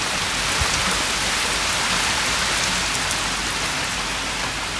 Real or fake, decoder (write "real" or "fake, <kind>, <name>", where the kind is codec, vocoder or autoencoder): real